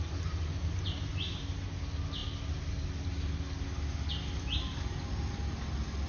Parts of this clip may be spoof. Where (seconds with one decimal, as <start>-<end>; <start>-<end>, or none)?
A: none